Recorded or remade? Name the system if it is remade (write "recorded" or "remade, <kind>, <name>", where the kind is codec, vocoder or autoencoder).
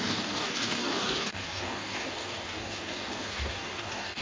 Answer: remade, codec, DAC